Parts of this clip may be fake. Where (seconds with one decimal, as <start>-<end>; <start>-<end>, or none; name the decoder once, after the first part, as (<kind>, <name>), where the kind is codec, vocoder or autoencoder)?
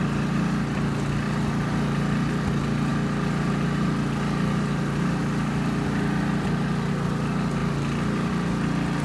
none